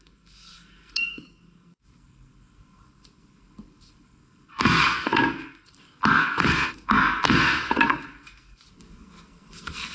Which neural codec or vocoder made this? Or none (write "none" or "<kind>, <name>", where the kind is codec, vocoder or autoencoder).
codec, SNAC